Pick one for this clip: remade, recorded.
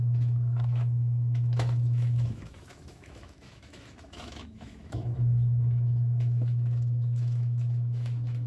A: remade